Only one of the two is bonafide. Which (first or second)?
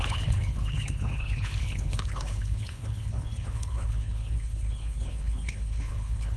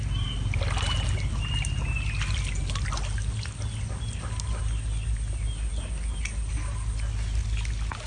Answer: second